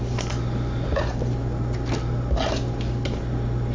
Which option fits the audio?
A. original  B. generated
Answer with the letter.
A